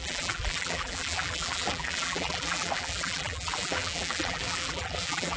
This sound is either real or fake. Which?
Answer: fake